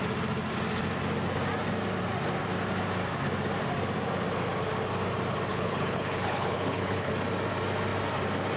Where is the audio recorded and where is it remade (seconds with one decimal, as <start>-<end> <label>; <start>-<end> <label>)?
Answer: 0.0-5.5 recorded; 5.5-7.1 remade; 7.1-8.6 recorded